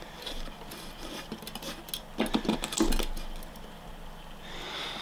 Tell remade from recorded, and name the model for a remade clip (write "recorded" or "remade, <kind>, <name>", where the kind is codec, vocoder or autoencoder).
recorded